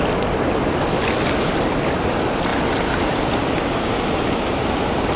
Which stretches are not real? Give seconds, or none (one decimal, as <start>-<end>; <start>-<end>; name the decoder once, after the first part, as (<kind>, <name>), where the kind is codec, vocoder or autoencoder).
none